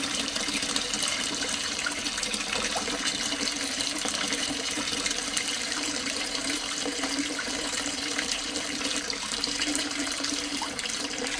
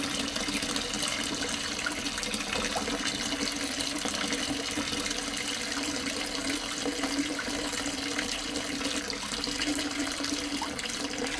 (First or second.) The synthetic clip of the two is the first